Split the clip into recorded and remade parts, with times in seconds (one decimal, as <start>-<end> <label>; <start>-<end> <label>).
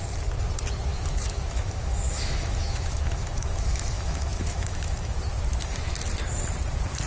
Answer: 0.0-0.9 recorded; 0.9-5.2 remade; 5.2-7.1 recorded